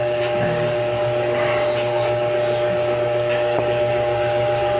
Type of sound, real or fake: fake